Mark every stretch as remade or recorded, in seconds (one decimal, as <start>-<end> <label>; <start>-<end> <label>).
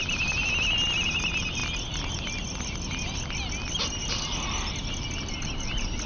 0.0-1.6 remade; 1.6-5.3 recorded; 5.3-6.1 remade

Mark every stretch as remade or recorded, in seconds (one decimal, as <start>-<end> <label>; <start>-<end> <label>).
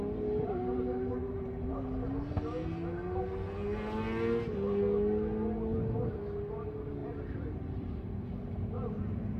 0.0-7.0 recorded; 7.0-8.1 remade; 8.1-9.4 recorded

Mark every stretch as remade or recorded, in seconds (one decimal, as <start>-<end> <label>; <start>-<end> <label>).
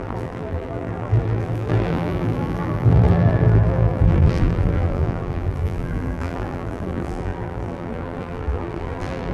0.0-9.3 remade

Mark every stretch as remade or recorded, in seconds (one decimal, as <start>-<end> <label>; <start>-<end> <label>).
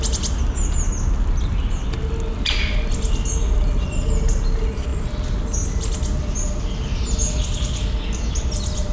0.0-8.9 recorded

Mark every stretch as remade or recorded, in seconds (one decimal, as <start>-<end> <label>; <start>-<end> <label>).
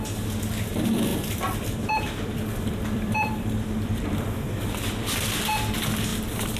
0.0-1.1 recorded; 1.1-5.1 remade; 5.1-6.6 recorded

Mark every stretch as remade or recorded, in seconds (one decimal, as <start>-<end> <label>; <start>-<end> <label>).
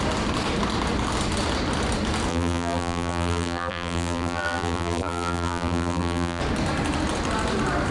0.0-2.3 recorded; 2.3-6.4 remade; 6.4-7.9 recorded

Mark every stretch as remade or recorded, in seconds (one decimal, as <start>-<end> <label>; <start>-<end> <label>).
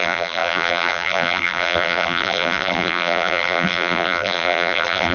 0.0-5.1 remade